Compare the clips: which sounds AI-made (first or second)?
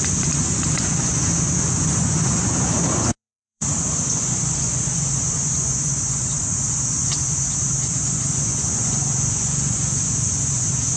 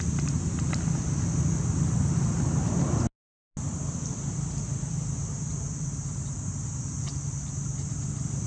first